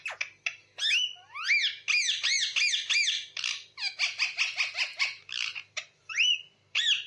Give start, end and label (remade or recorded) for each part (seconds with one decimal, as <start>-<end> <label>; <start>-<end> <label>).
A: 0.0-4.9 recorded; 4.9-7.1 remade